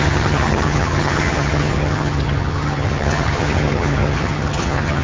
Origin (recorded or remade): remade